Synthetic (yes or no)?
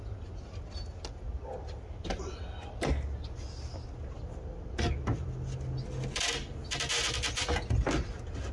no